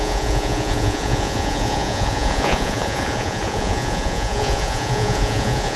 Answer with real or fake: fake